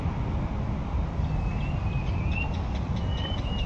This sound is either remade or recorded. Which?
recorded